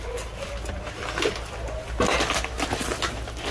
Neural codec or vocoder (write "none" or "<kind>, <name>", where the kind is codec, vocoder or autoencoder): none